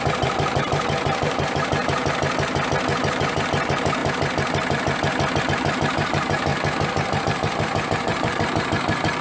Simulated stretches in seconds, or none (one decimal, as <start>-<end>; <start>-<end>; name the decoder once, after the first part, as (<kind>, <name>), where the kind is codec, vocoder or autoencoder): 0.0-2.0 (vocoder, BigVGAN v2); 3.0-4.0; 5.4-6.5; 7.2-9.2

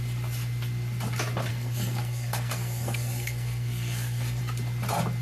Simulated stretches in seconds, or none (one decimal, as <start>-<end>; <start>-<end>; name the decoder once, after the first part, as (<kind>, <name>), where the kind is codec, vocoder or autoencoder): 1.5-4.4 (codec, SNAC)

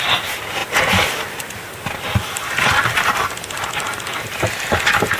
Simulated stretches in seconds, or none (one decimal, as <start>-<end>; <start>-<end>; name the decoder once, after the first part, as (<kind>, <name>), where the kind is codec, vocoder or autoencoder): none